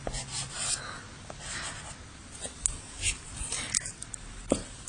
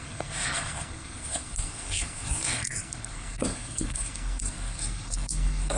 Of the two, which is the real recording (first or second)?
first